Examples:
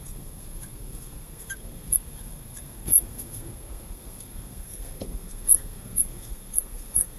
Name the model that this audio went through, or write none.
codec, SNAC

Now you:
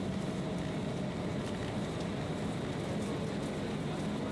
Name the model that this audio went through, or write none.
none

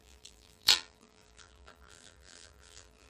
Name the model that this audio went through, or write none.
vocoder, BigVGAN v2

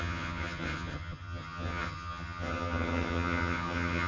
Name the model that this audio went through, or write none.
vocoder, HiFi-GAN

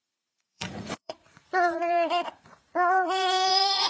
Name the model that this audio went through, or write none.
vocoder, Vocos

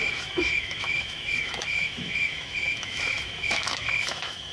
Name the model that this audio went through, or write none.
autoencoder, DAC-VAE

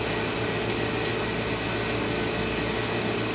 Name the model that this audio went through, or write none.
none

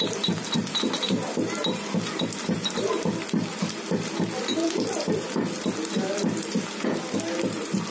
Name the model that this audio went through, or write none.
vocoder, BigVGAN v2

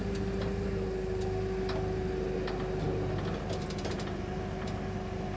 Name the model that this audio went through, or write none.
none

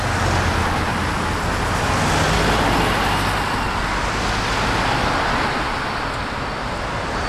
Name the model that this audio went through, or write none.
none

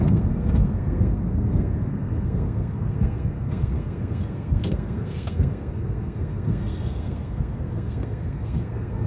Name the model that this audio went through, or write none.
codec, SNAC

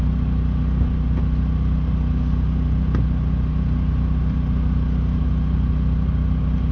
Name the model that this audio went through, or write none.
none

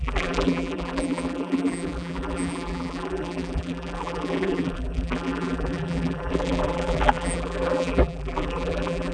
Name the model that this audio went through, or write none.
vocoder, BigVGAN v2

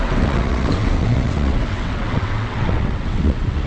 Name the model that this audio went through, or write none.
vocoder, WaveNeXt